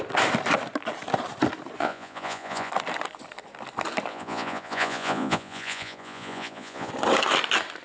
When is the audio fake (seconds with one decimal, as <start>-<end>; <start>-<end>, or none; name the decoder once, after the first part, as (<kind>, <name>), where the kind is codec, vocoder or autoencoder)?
1.8-2.7 (vocoder, Vocos); 4.1-6.9